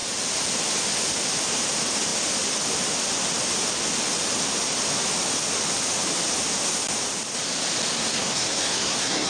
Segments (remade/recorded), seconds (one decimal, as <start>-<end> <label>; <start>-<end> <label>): 0.0-7.9 recorded; 7.9-9.3 remade